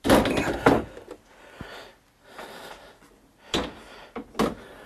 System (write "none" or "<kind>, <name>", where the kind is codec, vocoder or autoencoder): none